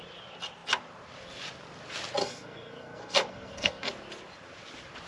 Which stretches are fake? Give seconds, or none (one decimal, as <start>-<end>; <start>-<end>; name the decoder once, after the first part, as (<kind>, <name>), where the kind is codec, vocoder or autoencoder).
2.2-3.9 (codec, SNAC)

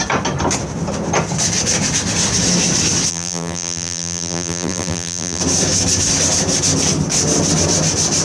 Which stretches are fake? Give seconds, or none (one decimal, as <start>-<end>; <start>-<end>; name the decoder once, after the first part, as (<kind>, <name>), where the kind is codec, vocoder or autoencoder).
3.1-5.4 (vocoder, BigVGAN v2)